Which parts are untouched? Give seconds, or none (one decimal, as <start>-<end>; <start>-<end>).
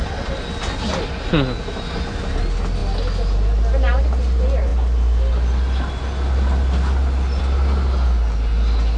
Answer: 0.0-0.9; 2.1-9.0